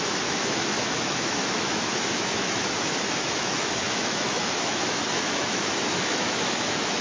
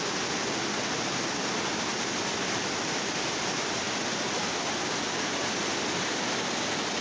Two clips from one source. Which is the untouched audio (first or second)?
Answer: second